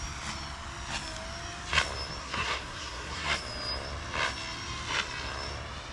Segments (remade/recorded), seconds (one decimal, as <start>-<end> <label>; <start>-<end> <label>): 0.0-2.2 recorded; 2.2-3.4 remade; 3.4-5.9 recorded